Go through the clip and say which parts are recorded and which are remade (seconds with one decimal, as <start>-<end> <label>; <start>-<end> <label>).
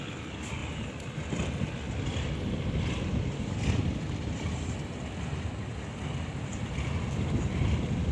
0.0-0.6 recorded; 0.6-1.7 remade; 1.7-8.1 recorded